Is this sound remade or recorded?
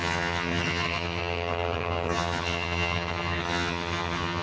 remade